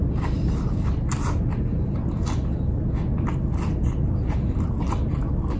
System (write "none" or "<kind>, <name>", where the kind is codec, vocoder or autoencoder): none